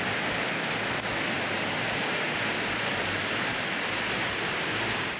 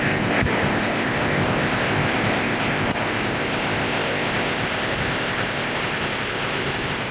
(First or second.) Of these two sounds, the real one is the first